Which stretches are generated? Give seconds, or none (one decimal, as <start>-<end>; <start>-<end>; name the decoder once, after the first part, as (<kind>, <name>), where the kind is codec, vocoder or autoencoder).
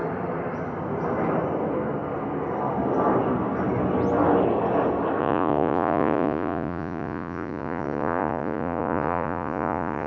5.2-10.1 (vocoder, Vocos)